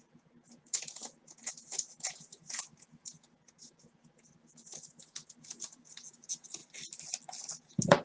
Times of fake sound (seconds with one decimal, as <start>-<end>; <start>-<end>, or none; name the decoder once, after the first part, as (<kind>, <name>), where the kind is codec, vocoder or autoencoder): 0.0-6.6 (vocoder, Vocos); 7.6-8.0